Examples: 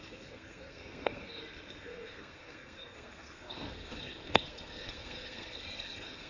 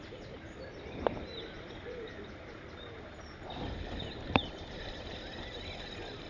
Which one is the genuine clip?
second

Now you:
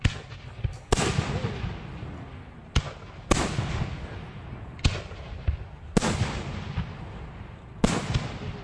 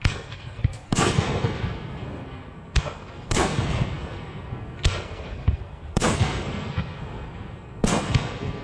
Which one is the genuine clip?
first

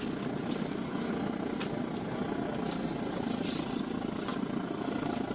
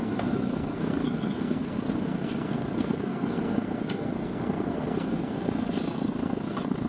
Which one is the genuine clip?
first